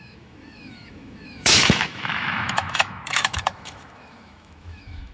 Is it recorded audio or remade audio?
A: remade